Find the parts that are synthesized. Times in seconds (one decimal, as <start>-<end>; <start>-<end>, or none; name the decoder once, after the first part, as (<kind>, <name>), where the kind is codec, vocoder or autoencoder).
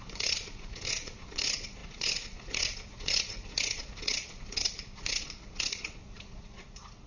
0.0-7.1 (vocoder, Vocos)